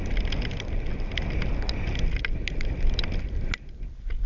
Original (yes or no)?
yes